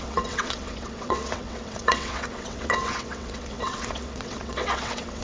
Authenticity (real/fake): fake